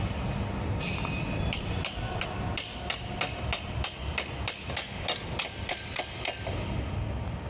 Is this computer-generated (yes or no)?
no